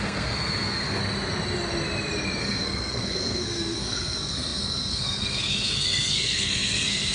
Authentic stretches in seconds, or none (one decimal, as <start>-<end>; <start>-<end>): 1.0-2.4